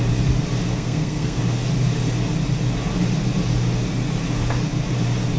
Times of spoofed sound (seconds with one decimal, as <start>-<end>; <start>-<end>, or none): 0.7-1.4